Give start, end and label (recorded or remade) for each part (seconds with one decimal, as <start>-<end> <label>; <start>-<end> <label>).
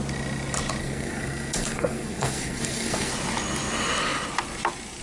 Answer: 0.0-0.8 recorded; 0.8-3.1 remade; 3.1-5.0 recorded